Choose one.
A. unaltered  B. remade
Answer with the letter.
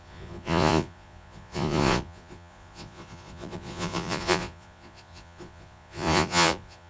B